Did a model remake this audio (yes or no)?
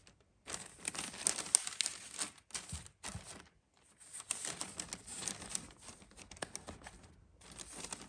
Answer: no